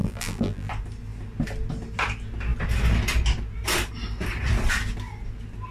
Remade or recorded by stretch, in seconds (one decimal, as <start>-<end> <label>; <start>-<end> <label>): 0.0-0.7 remade; 0.7-5.7 recorded